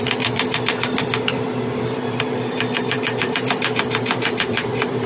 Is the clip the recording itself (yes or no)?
no